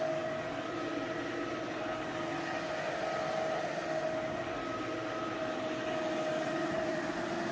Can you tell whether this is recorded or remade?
recorded